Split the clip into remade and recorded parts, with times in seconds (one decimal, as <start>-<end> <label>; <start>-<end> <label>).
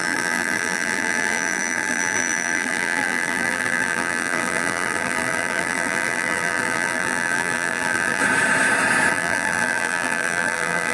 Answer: 0.0-8.2 remade; 8.2-9.1 recorded; 9.1-10.9 remade